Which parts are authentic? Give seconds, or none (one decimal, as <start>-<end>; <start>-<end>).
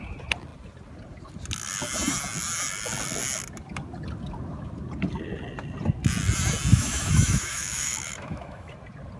0.0-6.7; 8.7-9.2